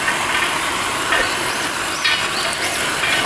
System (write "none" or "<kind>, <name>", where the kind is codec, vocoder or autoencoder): vocoder, BigVGAN v2